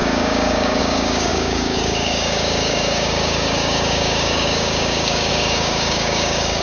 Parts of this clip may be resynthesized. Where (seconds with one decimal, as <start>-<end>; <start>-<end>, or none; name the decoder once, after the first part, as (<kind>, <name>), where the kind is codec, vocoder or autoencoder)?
0.0-6.6 (codec, DAC)